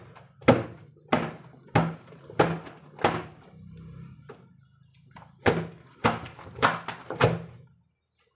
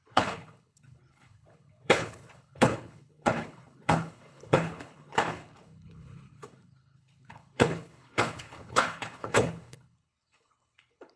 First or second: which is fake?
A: second